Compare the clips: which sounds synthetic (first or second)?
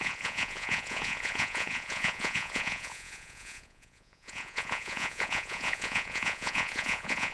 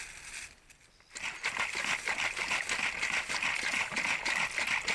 first